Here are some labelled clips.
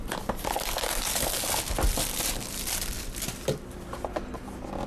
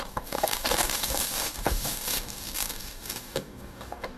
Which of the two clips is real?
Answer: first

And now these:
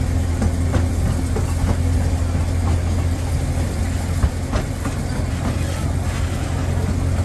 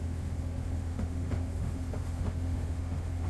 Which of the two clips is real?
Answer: first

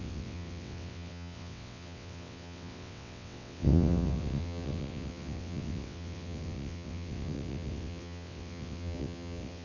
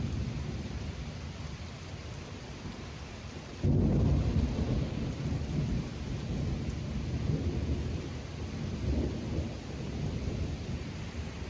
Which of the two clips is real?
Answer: second